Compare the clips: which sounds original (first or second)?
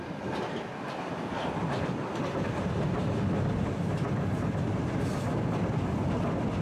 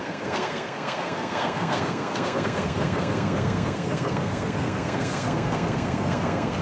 first